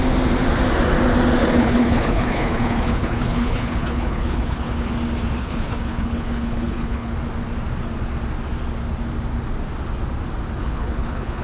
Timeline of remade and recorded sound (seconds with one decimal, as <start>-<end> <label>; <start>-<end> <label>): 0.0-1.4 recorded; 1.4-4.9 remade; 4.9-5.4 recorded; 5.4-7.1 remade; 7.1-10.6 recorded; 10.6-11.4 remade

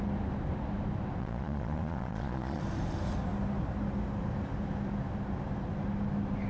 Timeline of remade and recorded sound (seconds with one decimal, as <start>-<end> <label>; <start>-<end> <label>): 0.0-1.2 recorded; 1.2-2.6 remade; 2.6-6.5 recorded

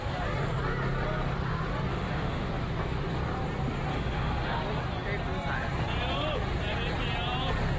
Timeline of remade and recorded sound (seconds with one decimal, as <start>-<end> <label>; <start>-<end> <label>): 0.0-1.9 recorded; 1.9-2.5 remade; 2.5-3.9 recorded; 3.9-4.6 remade; 4.6-7.8 recorded